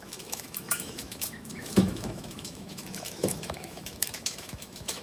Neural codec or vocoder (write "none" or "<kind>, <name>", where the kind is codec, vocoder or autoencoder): autoencoder, DAC-VAE